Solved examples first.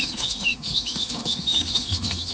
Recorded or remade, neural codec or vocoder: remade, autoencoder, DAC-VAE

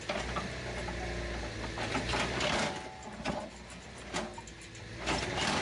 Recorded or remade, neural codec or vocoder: recorded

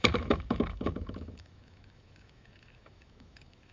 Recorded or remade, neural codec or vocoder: remade, autoencoder, DAC-VAE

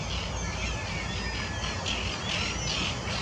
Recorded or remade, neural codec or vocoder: recorded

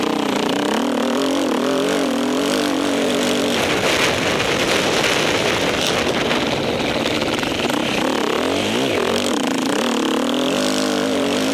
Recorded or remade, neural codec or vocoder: recorded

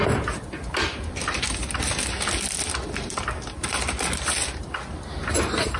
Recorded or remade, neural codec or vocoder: recorded